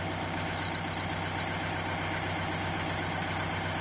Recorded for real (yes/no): yes